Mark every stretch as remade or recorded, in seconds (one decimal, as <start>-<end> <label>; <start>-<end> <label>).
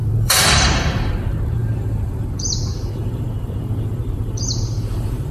0.0-5.3 remade